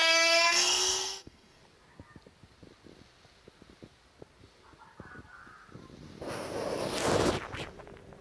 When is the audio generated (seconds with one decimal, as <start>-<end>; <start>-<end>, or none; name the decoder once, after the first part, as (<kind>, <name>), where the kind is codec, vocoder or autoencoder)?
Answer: 0.0-1.6 (codec, SNAC)